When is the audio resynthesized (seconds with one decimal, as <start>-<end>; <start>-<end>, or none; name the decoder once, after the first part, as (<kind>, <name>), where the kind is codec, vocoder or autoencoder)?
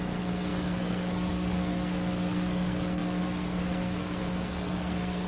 0.0-5.3 (codec, SNAC)